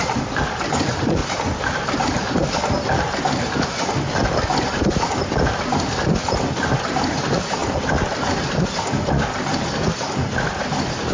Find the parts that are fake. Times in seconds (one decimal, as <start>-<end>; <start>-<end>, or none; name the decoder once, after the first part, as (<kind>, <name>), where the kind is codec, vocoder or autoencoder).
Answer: 0.0-1.2 (vocoder, BigVGAN v2); 4.6-11.1